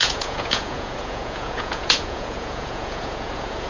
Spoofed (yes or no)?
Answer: yes